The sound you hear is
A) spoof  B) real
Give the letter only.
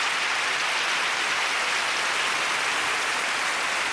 B